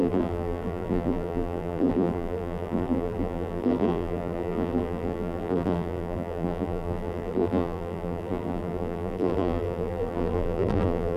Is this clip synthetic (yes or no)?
yes